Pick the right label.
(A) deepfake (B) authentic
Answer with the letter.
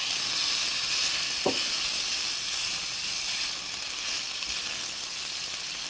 B